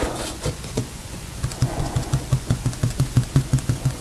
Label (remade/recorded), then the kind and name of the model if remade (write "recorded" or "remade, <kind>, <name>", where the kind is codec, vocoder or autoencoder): remade, vocoder, Vocos